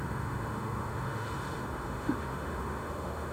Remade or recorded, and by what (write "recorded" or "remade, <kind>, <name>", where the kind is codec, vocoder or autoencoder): remade, autoencoder, DAC-VAE